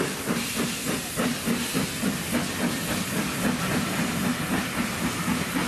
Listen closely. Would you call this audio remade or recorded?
recorded